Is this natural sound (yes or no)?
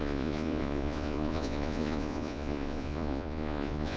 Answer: no